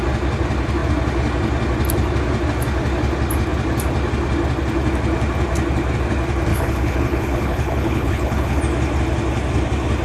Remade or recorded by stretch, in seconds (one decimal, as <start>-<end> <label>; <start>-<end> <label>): 0.0-6.5 recorded; 6.5-8.6 remade; 8.6-10.0 recorded